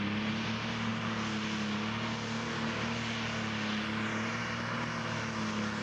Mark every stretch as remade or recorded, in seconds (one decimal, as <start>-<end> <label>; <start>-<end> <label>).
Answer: 0.0-5.8 recorded